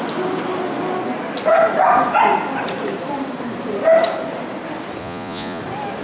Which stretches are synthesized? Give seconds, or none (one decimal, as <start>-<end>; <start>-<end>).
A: 5.0-5.6